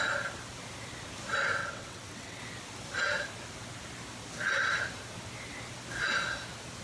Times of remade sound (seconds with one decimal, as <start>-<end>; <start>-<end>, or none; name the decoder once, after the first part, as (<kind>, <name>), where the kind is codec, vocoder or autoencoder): 1.6-2.4 (vocoder, WaveNeXt)